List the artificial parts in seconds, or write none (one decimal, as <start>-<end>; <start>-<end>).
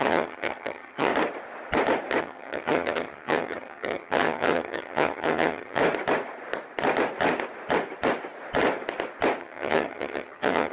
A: 0.0-1.1; 2.2-5.8; 9.4-10.7